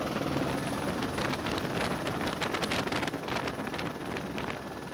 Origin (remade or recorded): recorded